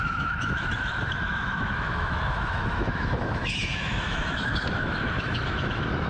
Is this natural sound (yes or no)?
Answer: no